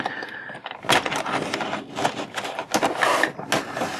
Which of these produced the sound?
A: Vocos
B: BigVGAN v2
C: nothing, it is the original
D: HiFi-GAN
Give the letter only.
C